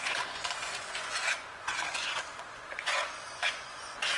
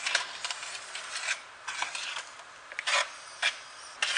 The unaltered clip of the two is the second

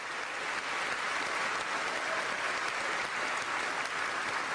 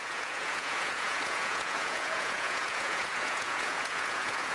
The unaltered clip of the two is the first